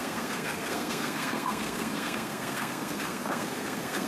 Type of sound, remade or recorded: remade